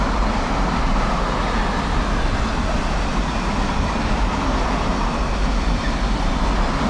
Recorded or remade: recorded